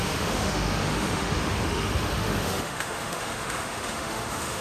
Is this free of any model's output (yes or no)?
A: no